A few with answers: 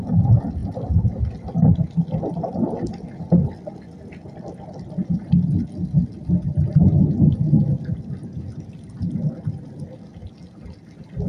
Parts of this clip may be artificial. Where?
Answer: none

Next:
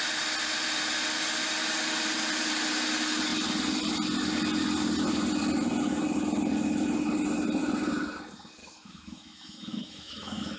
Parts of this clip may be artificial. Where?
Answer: 8.6-10.6 (autoencoder, DAC-VAE)